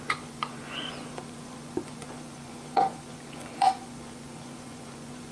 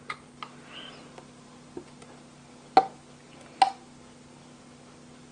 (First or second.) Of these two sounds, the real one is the second